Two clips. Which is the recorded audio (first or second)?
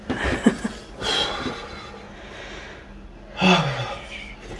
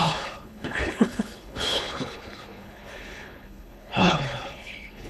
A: first